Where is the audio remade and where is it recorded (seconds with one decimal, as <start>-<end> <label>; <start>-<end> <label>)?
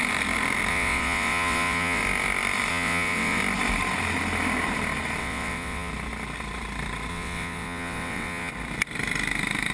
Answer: 0.0-0.7 recorded; 0.7-2.0 remade; 2.0-2.7 recorded; 2.7-3.4 remade; 3.4-5.2 recorded; 5.2-5.9 remade; 5.9-7.1 recorded; 7.1-8.5 remade; 8.5-9.7 recorded